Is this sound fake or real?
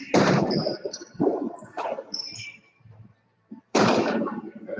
fake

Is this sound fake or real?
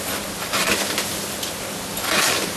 real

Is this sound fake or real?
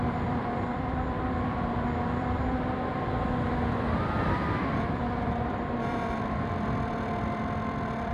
fake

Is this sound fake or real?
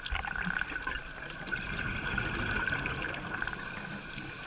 fake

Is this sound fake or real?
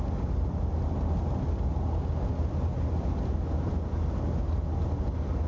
real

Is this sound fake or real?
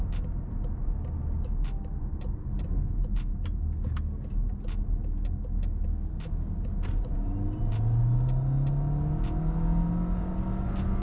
real